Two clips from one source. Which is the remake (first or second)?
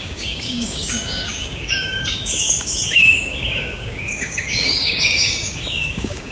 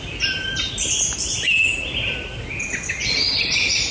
first